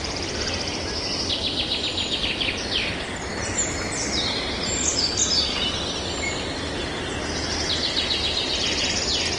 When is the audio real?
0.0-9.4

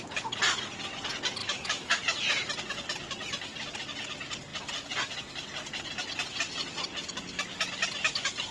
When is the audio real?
0.0-1.4; 2.0-8.5

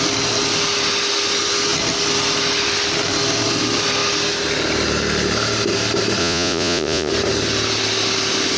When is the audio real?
0.0-6.2; 7.1-8.6

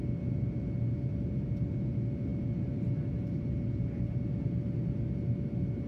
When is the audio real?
0.0-5.9